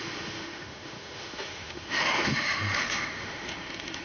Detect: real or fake fake